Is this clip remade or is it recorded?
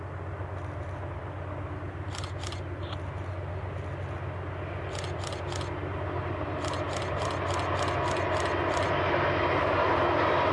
recorded